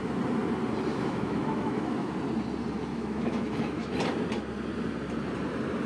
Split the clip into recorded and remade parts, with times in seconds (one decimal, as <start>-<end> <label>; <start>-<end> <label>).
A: 0.0-0.9 recorded; 0.9-2.1 remade; 2.1-2.9 recorded; 2.9-3.9 remade; 3.9-5.9 recorded